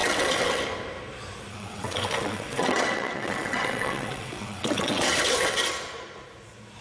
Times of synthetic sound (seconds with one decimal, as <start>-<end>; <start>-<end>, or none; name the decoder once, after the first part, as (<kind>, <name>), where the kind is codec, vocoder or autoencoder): 0.0-0.6 (vocoder, WaveNeXt); 1.5-5.6